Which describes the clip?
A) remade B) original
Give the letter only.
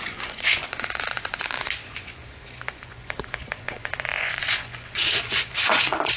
A